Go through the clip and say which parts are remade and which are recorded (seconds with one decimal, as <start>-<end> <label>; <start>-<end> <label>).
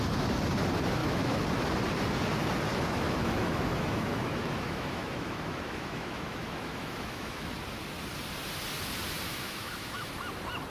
0.0-1.0 recorded; 1.0-1.5 remade; 1.5-2.7 recorded; 2.7-7.6 remade; 7.6-9.3 recorded; 9.3-10.1 remade; 10.1-10.7 recorded